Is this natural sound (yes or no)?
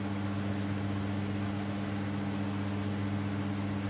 yes